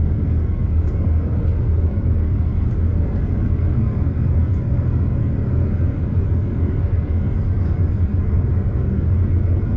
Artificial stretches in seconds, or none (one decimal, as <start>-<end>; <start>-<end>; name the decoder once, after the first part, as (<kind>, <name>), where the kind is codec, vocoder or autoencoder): 0.0-9.8 (codec, SNAC)

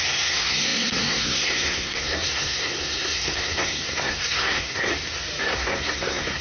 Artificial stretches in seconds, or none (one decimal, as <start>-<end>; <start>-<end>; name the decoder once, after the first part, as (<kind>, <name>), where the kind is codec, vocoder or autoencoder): 0.0-4.9 (codec, SNAC); 5.4-6.4